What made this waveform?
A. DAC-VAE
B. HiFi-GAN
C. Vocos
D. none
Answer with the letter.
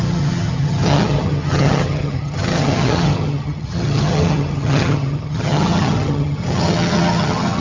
B